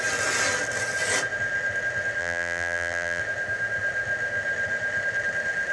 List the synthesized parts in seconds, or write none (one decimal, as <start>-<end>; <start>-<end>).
2.2-3.2